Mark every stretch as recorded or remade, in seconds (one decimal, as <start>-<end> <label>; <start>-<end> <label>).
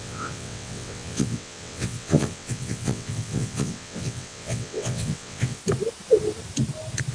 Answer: 0.0-5.6 remade; 5.6-7.1 recorded